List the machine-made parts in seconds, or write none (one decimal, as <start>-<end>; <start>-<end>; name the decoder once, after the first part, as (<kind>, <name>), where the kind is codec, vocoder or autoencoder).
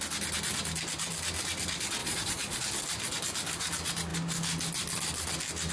2.0-2.6 (vocoder, Vocos)